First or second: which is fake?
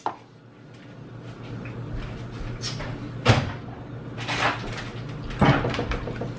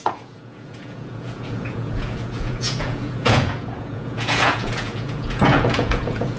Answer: second